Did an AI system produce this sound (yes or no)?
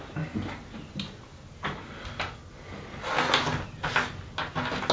no